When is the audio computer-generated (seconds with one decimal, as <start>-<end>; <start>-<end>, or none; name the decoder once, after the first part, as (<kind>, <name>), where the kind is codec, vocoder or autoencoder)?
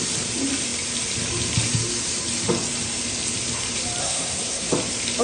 4.0-4.7 (codec, SNAC)